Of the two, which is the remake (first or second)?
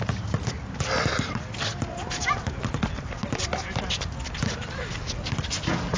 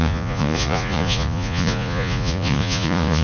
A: second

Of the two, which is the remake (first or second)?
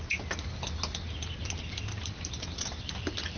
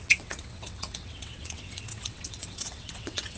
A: second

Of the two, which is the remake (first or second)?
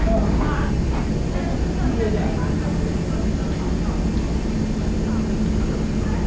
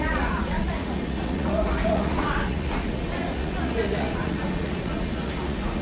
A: second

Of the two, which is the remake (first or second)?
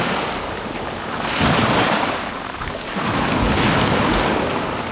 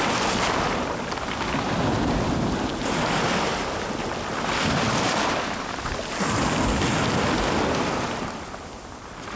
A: first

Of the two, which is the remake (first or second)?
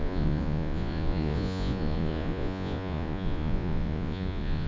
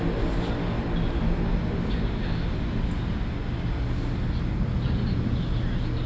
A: first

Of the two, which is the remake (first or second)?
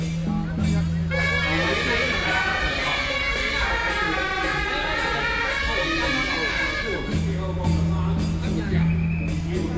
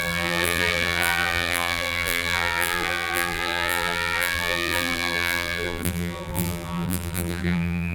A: second